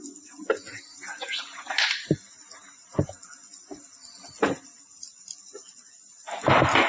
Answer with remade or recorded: recorded